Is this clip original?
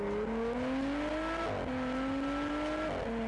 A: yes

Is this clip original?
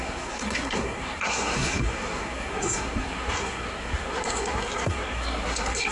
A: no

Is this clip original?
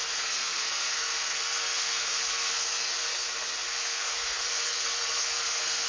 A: no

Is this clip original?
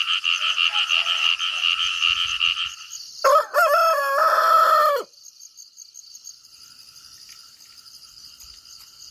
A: yes